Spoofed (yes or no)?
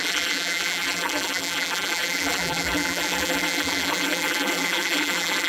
yes